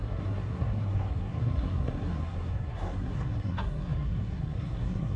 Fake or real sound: fake